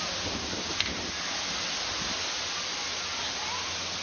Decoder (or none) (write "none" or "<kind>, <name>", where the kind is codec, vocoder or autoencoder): none